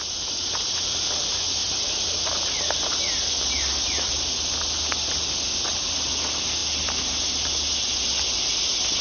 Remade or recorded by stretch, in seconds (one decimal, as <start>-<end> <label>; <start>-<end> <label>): 0.0-9.0 recorded